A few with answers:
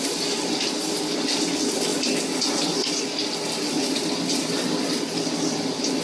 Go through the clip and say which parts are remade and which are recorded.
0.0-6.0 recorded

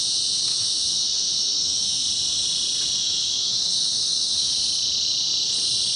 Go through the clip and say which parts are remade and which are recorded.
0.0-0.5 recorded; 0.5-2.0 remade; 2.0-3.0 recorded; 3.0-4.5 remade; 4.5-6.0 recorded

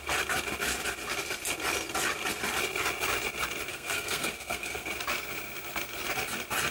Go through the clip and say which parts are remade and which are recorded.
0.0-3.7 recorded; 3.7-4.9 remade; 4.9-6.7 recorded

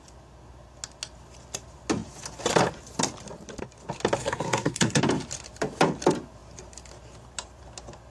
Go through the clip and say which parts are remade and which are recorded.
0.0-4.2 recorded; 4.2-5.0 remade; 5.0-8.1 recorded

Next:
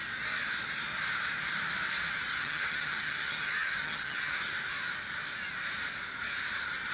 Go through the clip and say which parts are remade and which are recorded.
0.0-2.3 recorded; 2.3-4.5 remade; 4.5-6.9 recorded

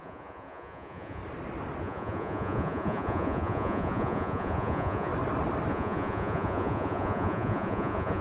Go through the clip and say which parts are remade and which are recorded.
0.0-1.2 remade; 1.2-1.8 recorded; 1.8-5.1 remade; 5.1-5.7 recorded; 5.7-8.2 remade

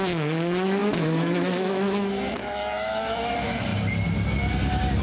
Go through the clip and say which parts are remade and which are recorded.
0.0-3.7 remade; 3.7-5.0 recorded

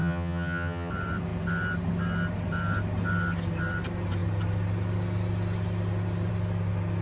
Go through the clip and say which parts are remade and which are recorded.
0.0-0.9 remade; 0.9-7.0 recorded